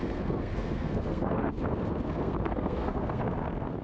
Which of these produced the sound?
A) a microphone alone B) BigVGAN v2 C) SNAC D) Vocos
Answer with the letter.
C